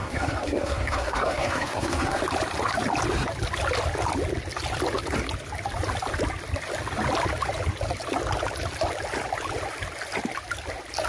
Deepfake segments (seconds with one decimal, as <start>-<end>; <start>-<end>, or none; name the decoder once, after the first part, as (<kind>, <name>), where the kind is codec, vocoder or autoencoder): 0.0-2.2 (codec, SNAC)